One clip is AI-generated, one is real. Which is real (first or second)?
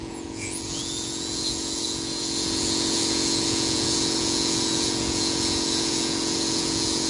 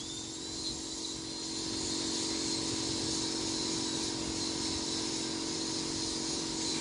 second